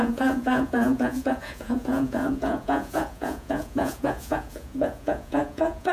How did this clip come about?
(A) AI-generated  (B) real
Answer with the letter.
A